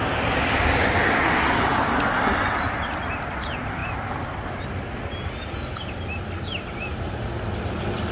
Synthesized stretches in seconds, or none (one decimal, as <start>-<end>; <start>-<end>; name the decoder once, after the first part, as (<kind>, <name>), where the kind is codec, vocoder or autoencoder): none